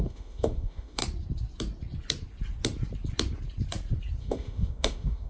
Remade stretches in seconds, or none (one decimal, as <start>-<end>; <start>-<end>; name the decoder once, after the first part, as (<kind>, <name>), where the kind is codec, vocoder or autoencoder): 0.0-1.0 (autoencoder, DAC-VAE); 4.2-5.3